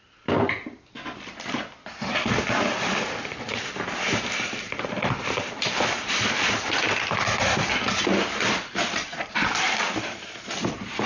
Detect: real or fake fake